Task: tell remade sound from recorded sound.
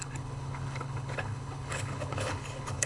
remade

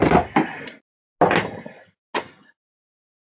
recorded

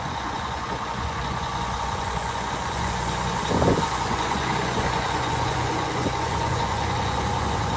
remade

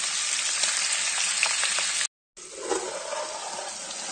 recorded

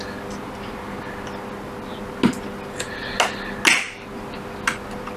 recorded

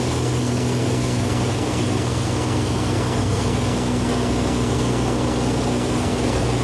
remade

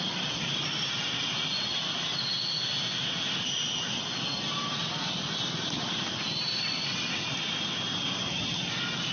recorded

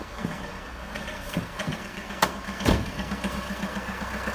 remade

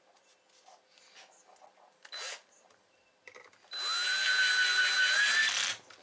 recorded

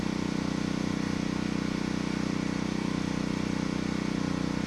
recorded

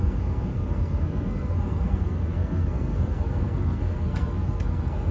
remade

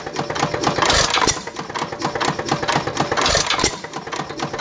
recorded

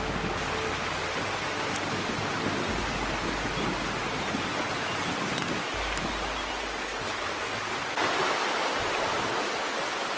recorded